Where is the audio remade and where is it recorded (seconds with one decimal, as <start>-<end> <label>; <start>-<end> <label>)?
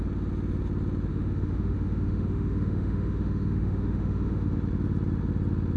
0.0-1.1 recorded; 1.1-4.6 remade; 4.6-5.8 recorded